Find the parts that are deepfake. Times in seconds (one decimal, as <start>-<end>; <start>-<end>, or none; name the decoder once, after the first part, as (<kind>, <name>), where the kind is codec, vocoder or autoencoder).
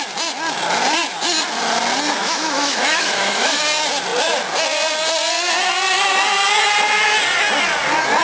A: 2.2-3.6 (autoencoder, DAC-VAE)